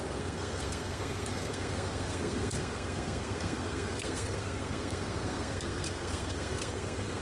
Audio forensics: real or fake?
fake